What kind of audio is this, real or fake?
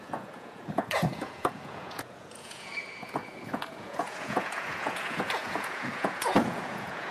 fake